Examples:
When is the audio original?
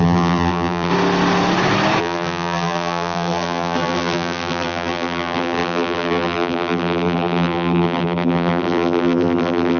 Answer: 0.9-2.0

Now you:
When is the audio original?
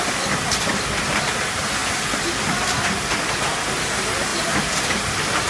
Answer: 0.0-4.3; 4.9-5.5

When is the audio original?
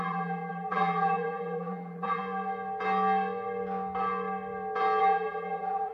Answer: 2.2-5.0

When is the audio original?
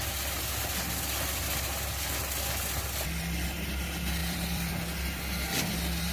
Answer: 0.0-4.2; 5.2-6.1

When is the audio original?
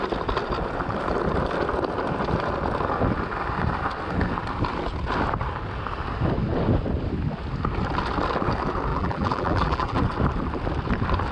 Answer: 0.0-8.9; 10.0-11.3